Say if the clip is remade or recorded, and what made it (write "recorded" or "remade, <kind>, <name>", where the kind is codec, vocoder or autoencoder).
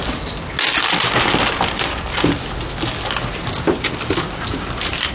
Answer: recorded